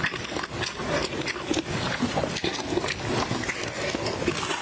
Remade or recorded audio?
recorded